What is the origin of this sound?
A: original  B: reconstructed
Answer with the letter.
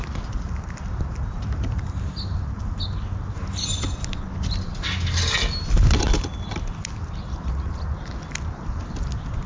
A